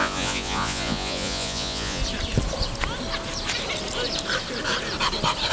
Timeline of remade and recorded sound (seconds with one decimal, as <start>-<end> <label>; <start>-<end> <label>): 0.0-2.0 remade; 2.0-5.5 recorded

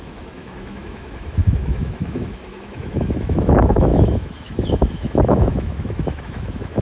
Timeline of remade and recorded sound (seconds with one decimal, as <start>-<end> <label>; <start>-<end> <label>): 0.0-6.8 remade

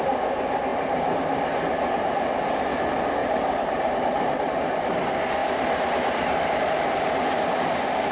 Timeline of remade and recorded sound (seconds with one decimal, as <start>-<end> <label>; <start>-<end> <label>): 0.0-0.7 recorded; 0.7-1.4 remade; 1.4-3.2 recorded; 3.2-4.6 remade; 4.6-8.1 recorded

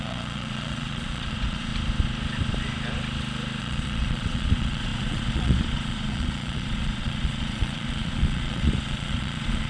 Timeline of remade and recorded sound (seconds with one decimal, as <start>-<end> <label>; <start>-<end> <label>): 0.0-1.7 remade; 1.7-3.6 recorded; 3.6-9.7 remade

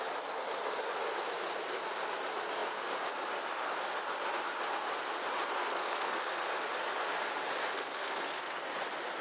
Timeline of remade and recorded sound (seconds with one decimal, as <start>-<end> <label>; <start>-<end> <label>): 0.0-5.5 recorded; 5.5-6.5 remade; 6.5-7.7 recorded; 7.7-8.6 remade; 8.6-9.2 recorded

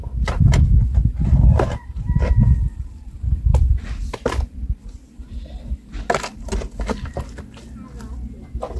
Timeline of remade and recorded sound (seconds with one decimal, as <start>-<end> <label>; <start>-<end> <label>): 0.0-8.8 recorded